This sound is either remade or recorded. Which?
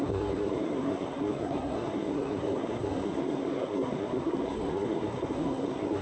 remade